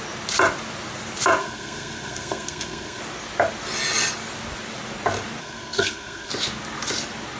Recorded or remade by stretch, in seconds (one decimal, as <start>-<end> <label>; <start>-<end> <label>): 0.0-1.4 recorded; 1.4-3.0 remade; 3.0-5.4 recorded; 5.4-6.3 remade; 6.3-7.4 recorded